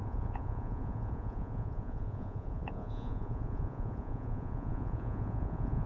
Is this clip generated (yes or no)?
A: yes